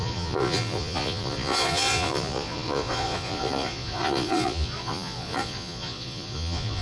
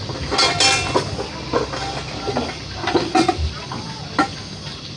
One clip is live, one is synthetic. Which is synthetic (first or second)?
first